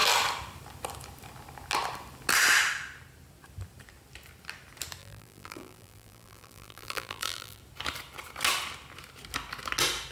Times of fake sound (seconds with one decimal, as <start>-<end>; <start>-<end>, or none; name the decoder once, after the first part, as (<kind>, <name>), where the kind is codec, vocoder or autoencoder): 5.0-7.6 (vocoder, BigVGAN v2)